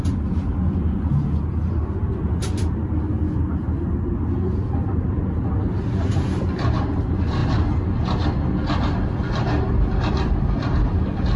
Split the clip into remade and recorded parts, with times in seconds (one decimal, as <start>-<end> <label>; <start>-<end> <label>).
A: 0.0-11.4 recorded